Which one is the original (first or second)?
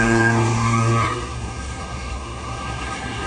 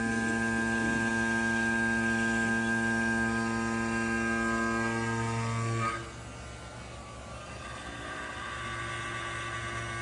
second